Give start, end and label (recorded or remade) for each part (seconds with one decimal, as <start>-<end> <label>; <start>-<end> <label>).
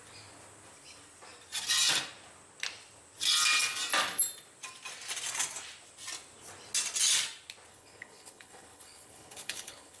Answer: 0.0-7.7 recorded; 7.7-10.0 remade